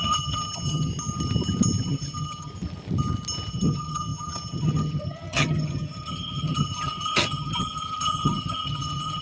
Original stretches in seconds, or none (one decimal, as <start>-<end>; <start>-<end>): 0.9-1.8; 2.5-3.5